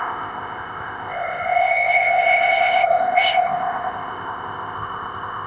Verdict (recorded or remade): remade